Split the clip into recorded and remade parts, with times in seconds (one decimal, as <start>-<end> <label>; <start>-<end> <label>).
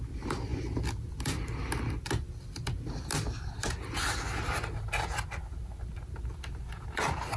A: 0.0-7.4 recorded